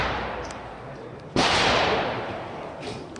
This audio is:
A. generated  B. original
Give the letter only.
A